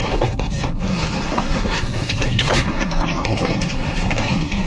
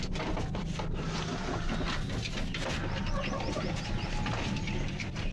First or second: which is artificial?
first